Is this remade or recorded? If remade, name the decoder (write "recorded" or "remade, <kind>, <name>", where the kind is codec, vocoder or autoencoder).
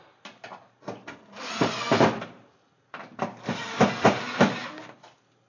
recorded